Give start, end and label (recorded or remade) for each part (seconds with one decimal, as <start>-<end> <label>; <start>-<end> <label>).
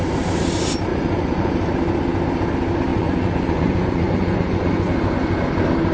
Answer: 0.0-0.9 recorded; 0.9-1.5 remade; 1.5-2.9 recorded; 2.9-4.9 remade; 4.9-5.9 recorded